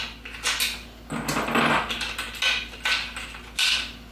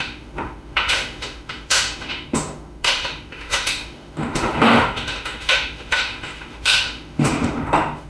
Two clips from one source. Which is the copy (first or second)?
second